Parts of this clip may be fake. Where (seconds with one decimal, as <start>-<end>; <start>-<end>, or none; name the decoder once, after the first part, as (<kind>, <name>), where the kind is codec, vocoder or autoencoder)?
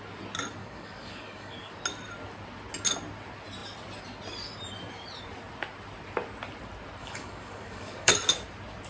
0.6-1.7 (codec, DAC); 7.0-8.1